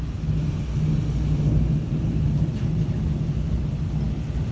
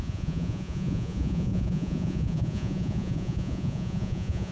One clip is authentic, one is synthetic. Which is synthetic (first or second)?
second